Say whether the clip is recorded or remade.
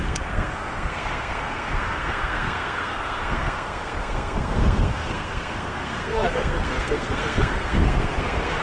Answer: remade